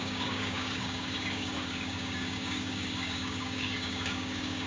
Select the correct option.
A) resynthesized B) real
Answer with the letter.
A